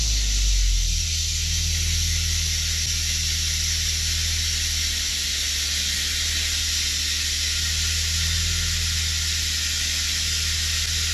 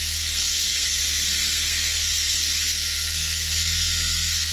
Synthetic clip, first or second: second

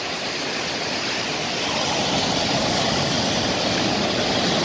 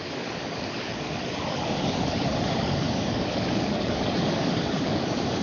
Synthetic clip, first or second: second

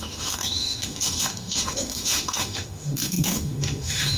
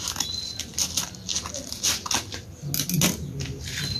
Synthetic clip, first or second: first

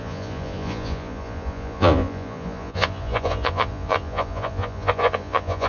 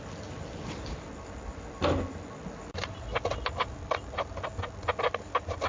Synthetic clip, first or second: first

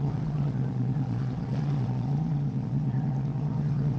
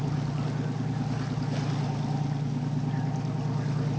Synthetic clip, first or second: first